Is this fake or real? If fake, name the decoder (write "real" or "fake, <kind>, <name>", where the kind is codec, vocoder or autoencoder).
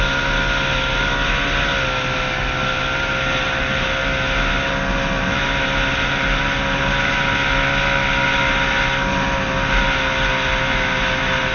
real